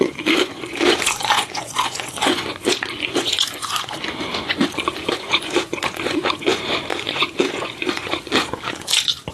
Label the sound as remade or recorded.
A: remade